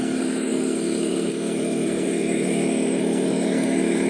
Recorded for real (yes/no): no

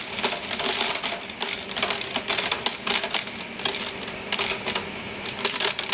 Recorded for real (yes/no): yes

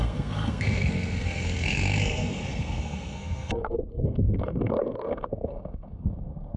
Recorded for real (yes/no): no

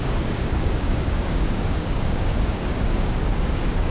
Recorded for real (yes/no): no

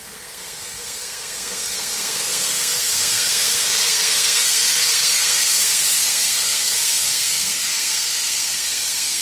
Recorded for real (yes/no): no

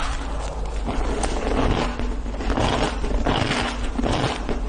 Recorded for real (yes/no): yes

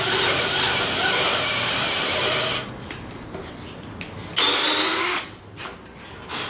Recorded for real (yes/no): yes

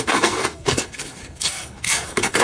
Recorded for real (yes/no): no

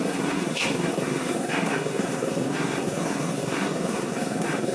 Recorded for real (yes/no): no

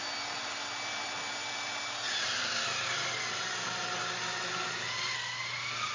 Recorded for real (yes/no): yes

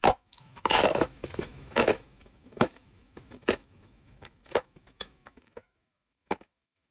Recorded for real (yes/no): no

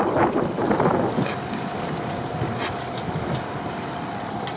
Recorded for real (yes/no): yes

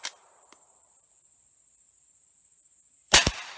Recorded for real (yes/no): no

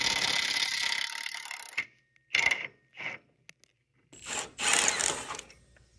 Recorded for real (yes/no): yes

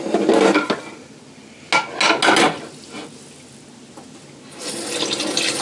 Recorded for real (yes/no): yes